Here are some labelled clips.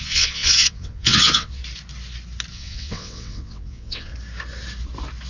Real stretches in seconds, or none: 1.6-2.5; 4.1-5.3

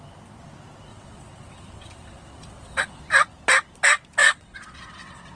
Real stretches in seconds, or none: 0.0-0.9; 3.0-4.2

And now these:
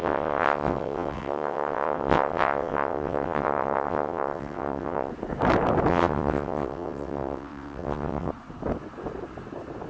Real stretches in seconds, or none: 5.1-5.9; 8.3-9.9

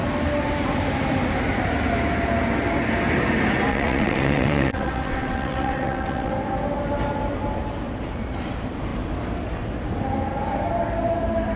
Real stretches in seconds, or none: 0.0-3.7; 6.3-11.6